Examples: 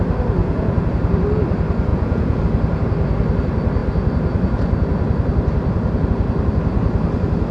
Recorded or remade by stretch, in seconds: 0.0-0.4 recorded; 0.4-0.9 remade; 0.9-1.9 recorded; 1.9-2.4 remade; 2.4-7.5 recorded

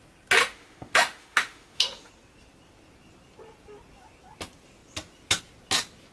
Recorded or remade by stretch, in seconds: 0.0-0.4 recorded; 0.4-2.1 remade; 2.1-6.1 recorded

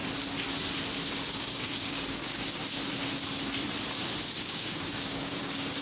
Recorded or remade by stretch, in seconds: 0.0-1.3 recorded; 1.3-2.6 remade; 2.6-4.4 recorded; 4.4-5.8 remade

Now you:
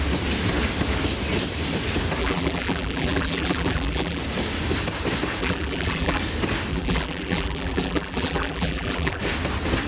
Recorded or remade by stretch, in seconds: 0.0-2.2 recorded; 2.2-4.2 remade; 4.2-5.4 recorded; 5.4-6.2 remade; 6.2-6.7 recorded; 6.7-9.2 remade; 9.2-9.9 recorded

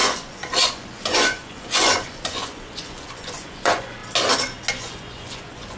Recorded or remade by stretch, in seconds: 0.0-4.0 remade; 4.0-4.7 recorded; 4.7-5.8 remade

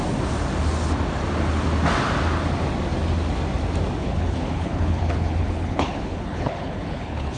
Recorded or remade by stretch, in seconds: 0.0-4.0 recorded; 4.0-7.4 remade

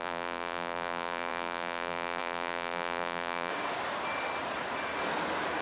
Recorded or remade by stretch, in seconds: 0.0-3.5 remade; 3.5-5.6 recorded

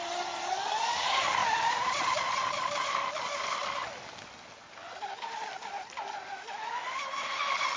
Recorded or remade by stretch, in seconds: 0.0-1.4 recorded; 1.4-2.3 remade; 2.3-7.8 recorded